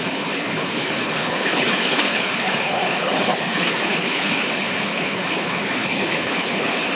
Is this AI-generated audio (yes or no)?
yes